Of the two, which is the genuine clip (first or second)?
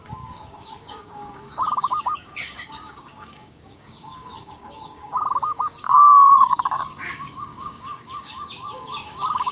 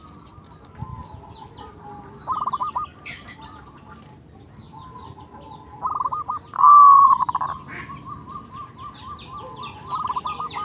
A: second